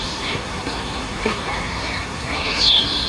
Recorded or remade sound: remade